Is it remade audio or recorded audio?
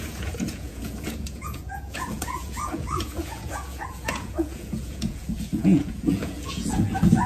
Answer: remade